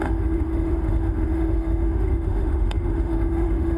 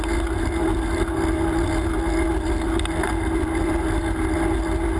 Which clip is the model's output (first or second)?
first